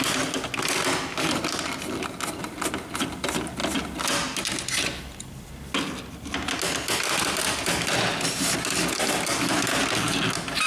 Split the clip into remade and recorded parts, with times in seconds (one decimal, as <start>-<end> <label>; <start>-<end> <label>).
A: 0.0-10.7 recorded